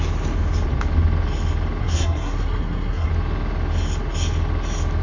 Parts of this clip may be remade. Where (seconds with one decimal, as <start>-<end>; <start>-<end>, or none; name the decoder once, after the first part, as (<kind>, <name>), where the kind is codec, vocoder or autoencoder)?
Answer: 1.8-3.1 (codec, SNAC)